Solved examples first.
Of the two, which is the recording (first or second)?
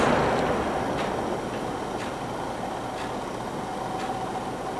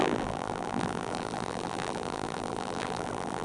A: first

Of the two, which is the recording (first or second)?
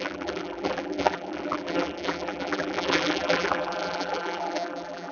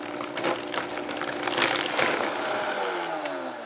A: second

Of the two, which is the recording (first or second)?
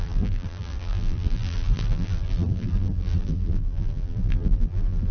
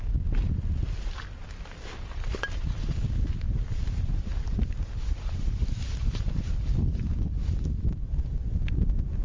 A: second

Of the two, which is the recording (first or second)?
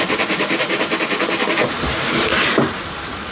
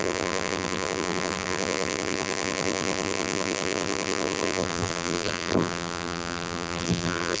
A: first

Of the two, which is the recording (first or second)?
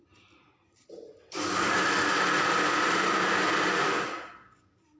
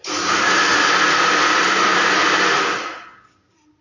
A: second